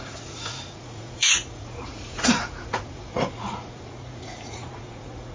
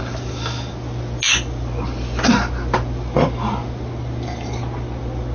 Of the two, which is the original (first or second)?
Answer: second